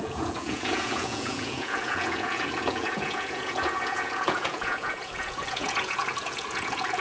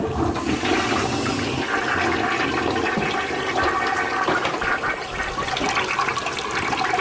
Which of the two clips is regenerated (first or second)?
first